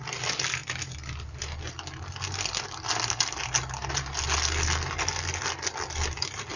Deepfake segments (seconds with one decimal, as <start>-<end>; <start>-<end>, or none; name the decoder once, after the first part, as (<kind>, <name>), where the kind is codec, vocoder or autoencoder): none